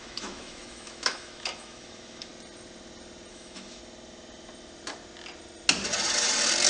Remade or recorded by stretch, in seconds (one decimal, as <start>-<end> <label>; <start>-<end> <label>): 0.0-2.3 remade; 2.3-3.3 recorded; 3.3-3.8 remade; 3.8-6.7 recorded